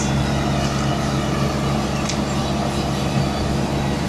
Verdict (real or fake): real